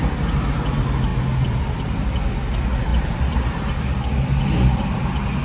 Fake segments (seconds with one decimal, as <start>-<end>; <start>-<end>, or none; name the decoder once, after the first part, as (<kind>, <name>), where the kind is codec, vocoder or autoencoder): none